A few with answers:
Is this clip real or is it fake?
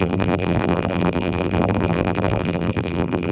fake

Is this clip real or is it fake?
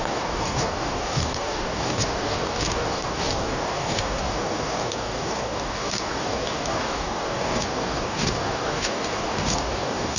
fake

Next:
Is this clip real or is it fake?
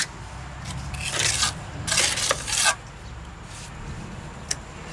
real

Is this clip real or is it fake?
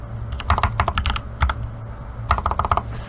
real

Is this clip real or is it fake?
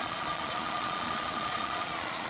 fake